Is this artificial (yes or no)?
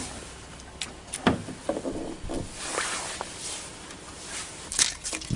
no